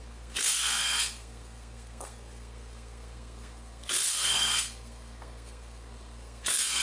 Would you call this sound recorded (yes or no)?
no